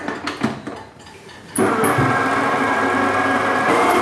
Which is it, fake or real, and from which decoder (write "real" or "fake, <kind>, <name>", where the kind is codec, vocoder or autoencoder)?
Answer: real